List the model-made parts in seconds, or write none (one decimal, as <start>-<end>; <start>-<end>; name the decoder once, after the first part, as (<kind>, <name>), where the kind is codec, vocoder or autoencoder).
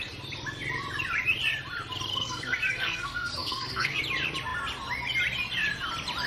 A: 2.1-4.0 (codec, SNAC)